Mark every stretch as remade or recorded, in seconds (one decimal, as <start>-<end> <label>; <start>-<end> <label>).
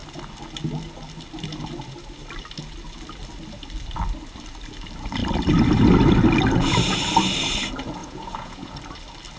0.0-8.0 recorded; 8.0-8.7 remade; 8.7-9.4 recorded